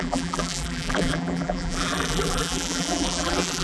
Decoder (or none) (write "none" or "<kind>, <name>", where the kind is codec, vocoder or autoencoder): vocoder, BigVGAN v2